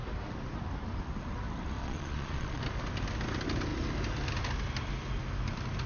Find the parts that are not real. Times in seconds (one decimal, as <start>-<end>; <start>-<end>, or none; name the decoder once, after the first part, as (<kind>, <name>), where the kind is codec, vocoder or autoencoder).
1.8-2.6 (vocoder, Vocos)